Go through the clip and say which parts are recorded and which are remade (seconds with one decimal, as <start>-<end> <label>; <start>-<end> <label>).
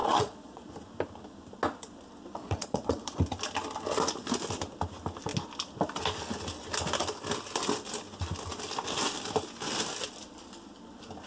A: 0.0-0.7 remade; 0.7-2.4 recorded; 2.4-3.2 remade; 3.2-11.3 recorded